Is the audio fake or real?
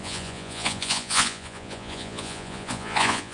fake